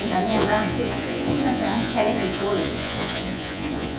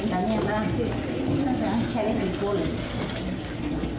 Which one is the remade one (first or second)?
first